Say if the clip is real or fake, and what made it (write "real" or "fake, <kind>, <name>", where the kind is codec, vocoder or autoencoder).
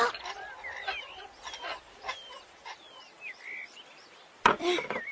real